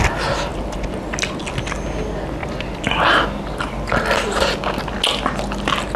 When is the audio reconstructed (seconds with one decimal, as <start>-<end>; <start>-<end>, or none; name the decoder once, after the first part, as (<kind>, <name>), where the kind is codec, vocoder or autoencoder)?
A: none